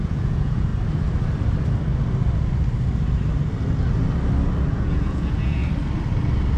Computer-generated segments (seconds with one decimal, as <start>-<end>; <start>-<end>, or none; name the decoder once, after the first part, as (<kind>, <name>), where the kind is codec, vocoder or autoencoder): 0.0-0.7 (vocoder, Vocos); 4.7-5.6